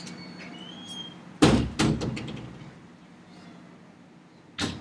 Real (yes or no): yes